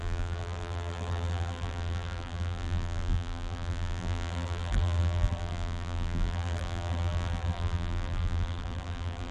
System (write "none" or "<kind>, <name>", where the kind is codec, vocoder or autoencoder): vocoder, BigVGAN v2